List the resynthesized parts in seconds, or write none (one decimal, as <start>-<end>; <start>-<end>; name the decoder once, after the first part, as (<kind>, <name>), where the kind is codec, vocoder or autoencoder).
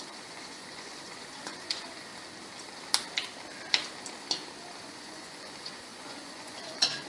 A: 0.0-2.1 (vocoder, Vocos); 4.8-7.1